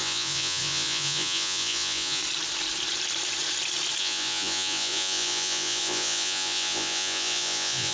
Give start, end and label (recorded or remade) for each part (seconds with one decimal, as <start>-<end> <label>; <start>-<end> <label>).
0.0-2.2 remade; 2.2-4.0 recorded; 4.0-7.9 remade